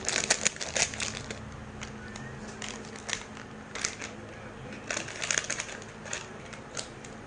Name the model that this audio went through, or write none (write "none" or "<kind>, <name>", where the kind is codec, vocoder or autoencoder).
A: none